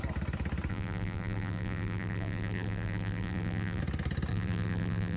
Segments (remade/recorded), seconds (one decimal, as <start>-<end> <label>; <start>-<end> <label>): 0.0-0.7 recorded; 0.7-3.8 remade; 3.8-4.3 recorded; 4.3-5.2 remade